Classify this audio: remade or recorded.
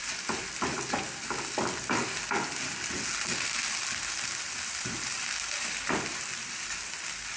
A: recorded